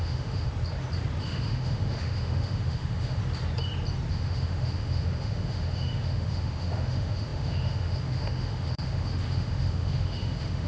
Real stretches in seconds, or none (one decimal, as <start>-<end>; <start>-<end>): 0.5-1.2; 3.2-4.1